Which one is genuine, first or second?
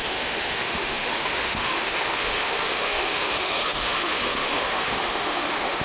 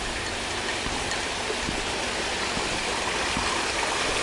second